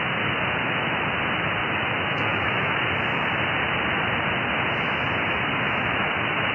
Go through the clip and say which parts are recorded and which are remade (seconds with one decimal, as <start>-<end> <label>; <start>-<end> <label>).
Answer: 0.0-1.6 recorded; 1.6-2.7 remade; 2.7-5.5 recorded; 5.5-6.5 remade